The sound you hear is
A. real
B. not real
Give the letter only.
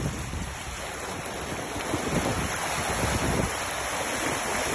A